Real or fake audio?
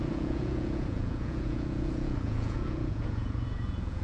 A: fake